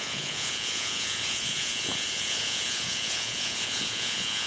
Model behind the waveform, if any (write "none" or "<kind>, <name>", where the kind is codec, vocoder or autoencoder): vocoder, Vocos